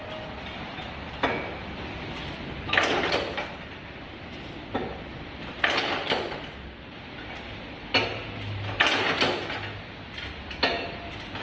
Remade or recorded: recorded